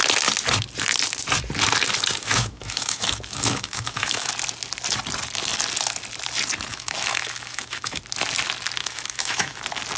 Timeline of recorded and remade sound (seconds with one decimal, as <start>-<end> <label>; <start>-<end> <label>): 0.0-2.2 recorded; 2.2-4.3 remade; 4.3-6.7 recorded; 6.7-8.0 remade; 8.0-8.8 recorded; 8.8-9.6 remade; 9.6-10.0 recorded